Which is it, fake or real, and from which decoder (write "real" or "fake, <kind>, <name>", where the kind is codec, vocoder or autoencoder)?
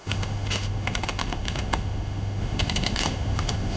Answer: fake, autoencoder, DAC-VAE